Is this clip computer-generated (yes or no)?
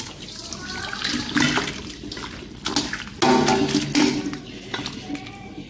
no